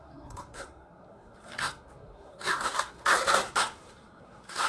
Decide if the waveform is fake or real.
fake